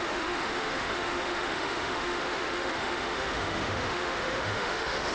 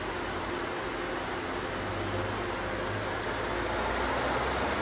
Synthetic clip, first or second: first